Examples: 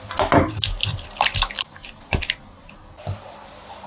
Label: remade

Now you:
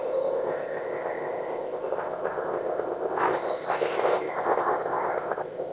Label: remade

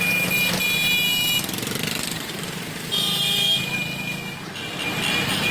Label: recorded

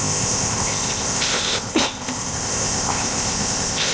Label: remade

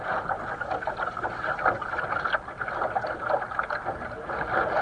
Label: recorded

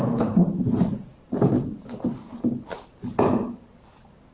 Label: recorded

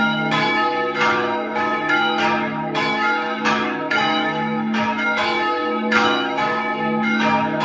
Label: remade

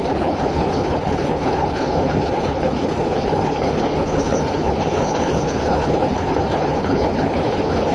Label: remade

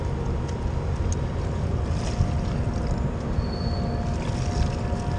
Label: recorded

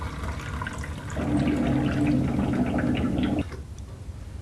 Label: recorded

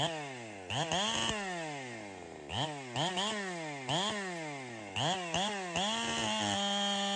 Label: recorded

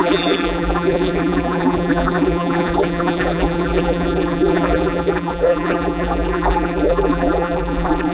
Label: remade